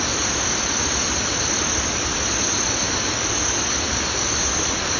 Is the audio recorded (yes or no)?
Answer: yes